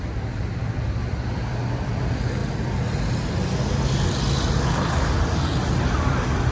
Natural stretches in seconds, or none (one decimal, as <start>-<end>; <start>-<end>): 0.0-6.5